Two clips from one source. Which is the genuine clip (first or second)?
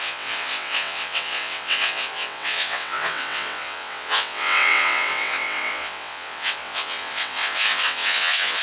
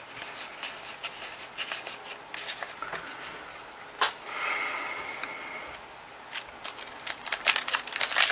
second